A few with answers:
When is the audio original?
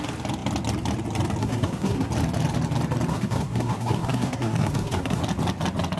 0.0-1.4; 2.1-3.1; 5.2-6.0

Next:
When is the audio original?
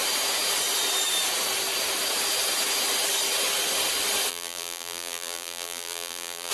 0.0-4.3